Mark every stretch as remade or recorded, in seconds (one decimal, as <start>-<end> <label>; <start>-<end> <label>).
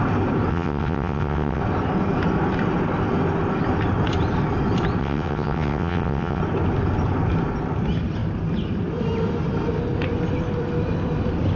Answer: 0.0-0.5 recorded; 0.5-1.6 remade; 1.6-5.0 recorded; 5.0-6.4 remade; 6.4-11.6 recorded